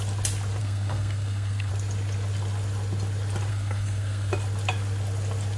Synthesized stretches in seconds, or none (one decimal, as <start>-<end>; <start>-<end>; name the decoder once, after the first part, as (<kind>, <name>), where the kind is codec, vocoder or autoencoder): 0.6-1.7 (codec, SNAC); 3.5-4.3